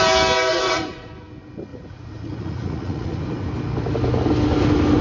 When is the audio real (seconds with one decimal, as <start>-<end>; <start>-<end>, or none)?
0.0-0.5; 1.1-1.7; 3.2-5.0